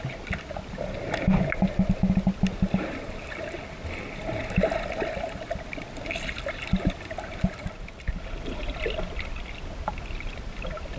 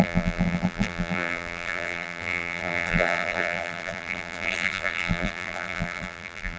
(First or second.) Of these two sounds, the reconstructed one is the second